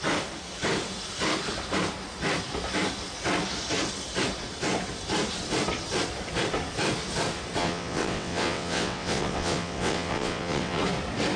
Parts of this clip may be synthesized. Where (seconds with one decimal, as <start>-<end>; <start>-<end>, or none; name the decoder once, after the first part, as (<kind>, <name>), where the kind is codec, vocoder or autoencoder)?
7.6-10.8 (vocoder, WaveNeXt)